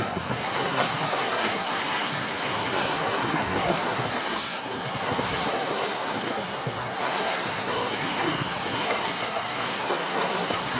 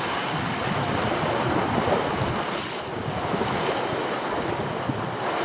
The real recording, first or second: second